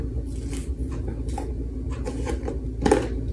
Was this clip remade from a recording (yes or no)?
no